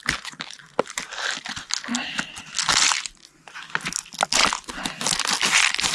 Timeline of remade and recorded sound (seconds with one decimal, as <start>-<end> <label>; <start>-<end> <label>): 0.0-5.9 recorded